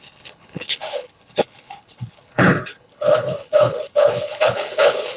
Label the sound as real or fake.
fake